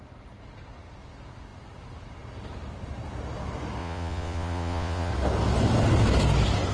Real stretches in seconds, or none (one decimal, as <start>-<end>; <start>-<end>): 0.0-3.8; 5.1-6.7

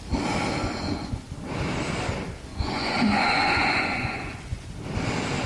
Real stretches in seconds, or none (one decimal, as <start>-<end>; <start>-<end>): 0.0-0.6; 1.2-2.5; 4.7-5.5

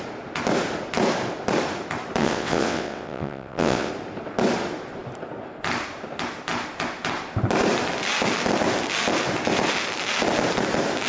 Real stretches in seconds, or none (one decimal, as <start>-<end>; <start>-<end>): 0.0-2.2; 3.9-11.1

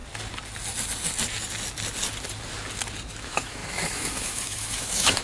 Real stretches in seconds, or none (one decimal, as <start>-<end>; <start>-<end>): 0.0-3.1

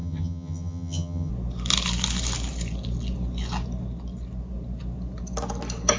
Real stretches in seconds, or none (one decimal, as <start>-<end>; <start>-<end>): 1.3-6.0

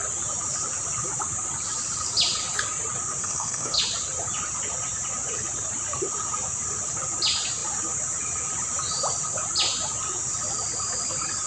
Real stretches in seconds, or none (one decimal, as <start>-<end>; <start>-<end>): 0.0-3.2; 3.8-11.5